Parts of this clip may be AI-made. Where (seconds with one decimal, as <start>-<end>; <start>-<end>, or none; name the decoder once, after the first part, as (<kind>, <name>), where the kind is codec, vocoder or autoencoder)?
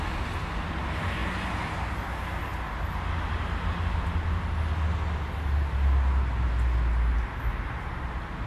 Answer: none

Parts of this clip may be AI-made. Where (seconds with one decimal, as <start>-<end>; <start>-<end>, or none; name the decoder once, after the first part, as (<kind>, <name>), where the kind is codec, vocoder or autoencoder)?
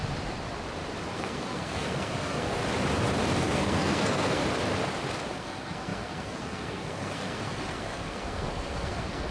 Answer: 1.1-2.6 (codec, SNAC); 3.4-4.4; 5.3-9.3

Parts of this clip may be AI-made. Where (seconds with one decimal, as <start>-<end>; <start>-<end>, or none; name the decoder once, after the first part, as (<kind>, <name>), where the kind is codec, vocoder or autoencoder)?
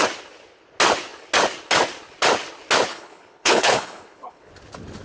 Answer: 2.9-4.5 (codec, HILCodec)